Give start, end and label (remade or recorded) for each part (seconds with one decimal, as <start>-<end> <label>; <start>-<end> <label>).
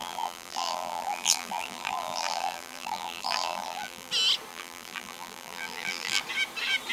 0.0-4.1 remade; 4.1-4.5 recorded; 4.5-6.2 remade; 6.2-6.9 recorded